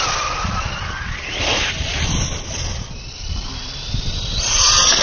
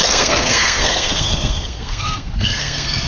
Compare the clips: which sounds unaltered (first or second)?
first